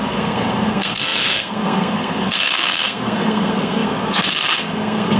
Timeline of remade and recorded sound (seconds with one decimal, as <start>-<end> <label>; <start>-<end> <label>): 0.0-5.2 remade

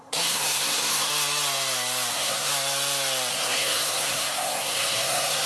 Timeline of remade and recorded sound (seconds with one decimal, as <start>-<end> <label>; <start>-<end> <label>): 0.0-1.1 remade; 1.1-2.1 recorded; 2.1-2.5 remade; 2.5-3.3 recorded; 3.3-5.5 remade

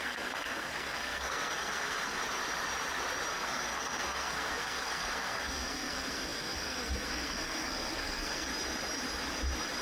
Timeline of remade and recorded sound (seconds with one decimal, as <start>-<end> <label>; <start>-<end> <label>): 0.0-2.2 remade; 2.2-3.3 recorded; 3.3-8.5 remade; 8.5-9.8 recorded

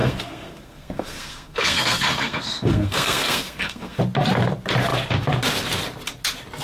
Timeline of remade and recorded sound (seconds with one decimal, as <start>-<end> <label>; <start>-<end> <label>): 0.0-4.0 remade; 4.0-6.6 recorded

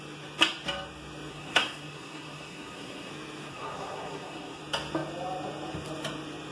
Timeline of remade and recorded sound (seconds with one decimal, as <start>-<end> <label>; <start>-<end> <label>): 0.0-1.3 recorded; 1.3-3.1 remade; 3.1-3.5 recorded; 3.5-4.6 remade; 4.6-6.5 recorded

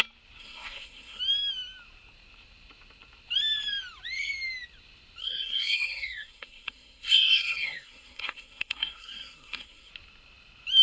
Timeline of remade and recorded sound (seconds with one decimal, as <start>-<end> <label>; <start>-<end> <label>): 0.0-0.4 recorded; 0.4-1.2 remade; 1.2-5.2 recorded; 5.2-9.9 remade; 9.9-10.8 recorded

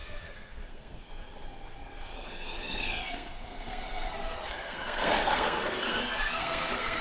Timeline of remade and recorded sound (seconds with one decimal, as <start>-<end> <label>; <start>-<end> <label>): 0.0-7.0 remade

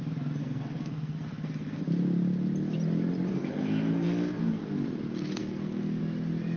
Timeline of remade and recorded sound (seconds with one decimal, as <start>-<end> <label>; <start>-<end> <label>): 0.0-0.4 recorded; 0.4-1.8 remade; 1.8-3.3 recorded; 3.3-4.6 remade; 4.6-5.4 recorded; 5.4-6.0 remade; 6.0-6.6 recorded